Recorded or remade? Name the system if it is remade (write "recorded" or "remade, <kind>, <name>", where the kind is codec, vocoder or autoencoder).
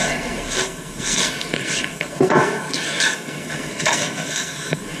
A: remade, codec, SNAC